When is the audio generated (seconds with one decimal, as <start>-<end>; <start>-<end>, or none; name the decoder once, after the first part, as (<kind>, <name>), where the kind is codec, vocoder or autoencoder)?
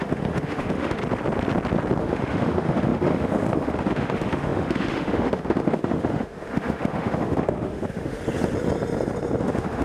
0.0-1.0 (autoencoder, DAC-VAE); 2.0-8.2; 9.4-9.8